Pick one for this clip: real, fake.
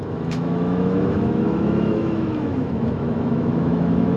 fake